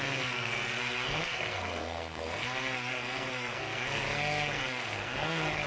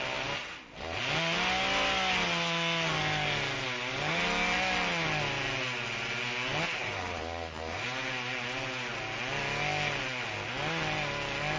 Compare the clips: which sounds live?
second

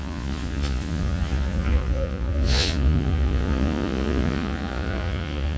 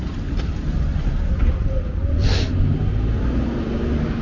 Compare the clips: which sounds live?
second